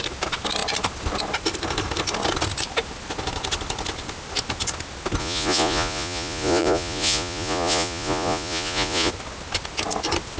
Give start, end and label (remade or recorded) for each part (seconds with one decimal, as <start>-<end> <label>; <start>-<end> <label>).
0.0-5.2 recorded; 5.2-9.1 remade; 9.1-10.4 recorded